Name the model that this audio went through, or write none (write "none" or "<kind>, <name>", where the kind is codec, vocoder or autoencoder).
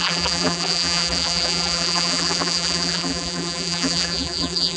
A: vocoder, BigVGAN v2